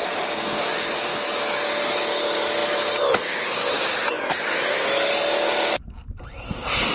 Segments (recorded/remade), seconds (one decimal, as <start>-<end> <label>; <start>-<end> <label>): 0.0-1.1 recorded; 1.1-1.6 remade; 1.6-6.9 recorded